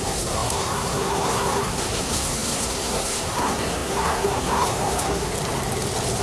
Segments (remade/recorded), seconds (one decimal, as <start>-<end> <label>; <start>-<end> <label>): 0.0-5.3 remade; 5.3-6.2 recorded